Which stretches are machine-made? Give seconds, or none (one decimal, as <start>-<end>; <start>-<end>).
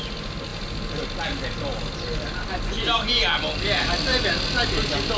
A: none